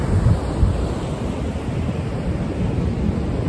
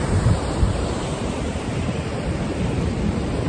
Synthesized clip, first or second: second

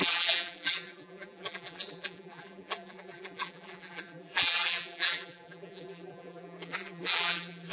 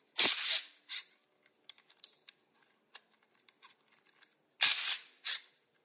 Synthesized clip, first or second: first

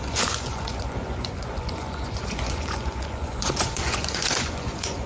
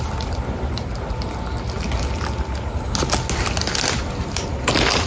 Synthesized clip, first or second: first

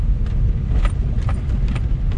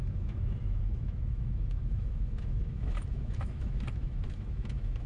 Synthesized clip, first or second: second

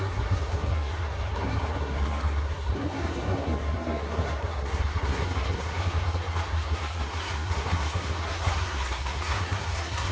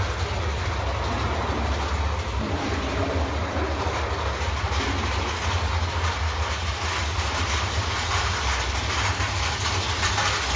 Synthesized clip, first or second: first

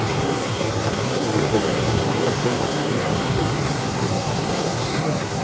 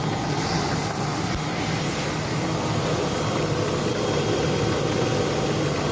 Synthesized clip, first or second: first